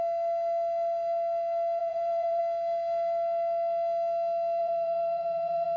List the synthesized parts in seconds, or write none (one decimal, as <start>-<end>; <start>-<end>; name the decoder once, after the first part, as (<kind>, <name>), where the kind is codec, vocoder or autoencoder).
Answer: 1.8-2.4 (vocoder, Vocos); 4.6-5.8